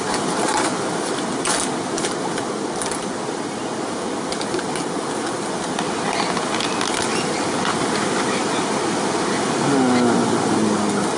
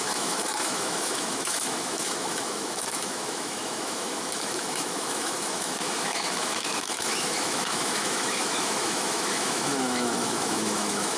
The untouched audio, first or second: first